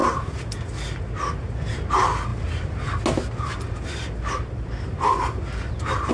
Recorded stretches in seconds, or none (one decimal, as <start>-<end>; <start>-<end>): 0.0-6.1